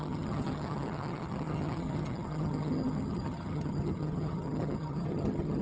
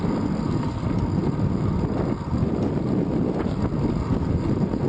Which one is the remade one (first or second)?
first